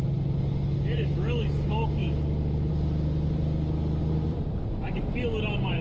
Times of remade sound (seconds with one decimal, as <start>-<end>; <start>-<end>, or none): 2.0-2.7; 4.0-4.6